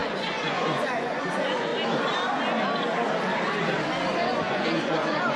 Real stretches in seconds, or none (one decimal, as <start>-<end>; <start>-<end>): 1.7-4.4